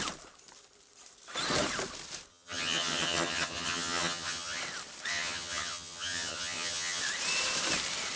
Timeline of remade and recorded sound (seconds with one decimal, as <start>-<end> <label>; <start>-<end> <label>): 0.0-2.3 recorded; 2.3-4.6 remade; 4.6-5.1 recorded; 5.1-7.0 remade; 7.0-8.2 recorded